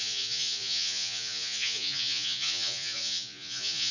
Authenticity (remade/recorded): remade